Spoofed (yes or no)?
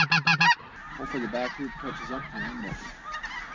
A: no